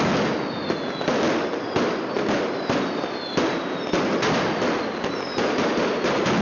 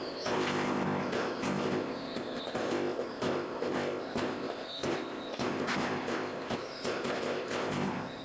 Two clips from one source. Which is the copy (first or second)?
second